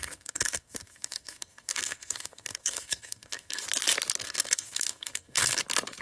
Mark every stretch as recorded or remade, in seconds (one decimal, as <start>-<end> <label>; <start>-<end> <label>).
0.0-3.6 remade; 3.6-4.2 recorded; 4.2-5.6 remade; 5.6-6.0 recorded